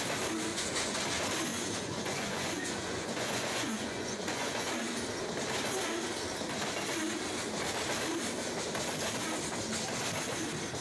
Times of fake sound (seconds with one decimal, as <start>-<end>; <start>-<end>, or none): 0.5-1.0; 1.5-4.7